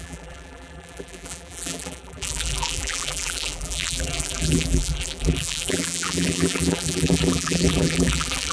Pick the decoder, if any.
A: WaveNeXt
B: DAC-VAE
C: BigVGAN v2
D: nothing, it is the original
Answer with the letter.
C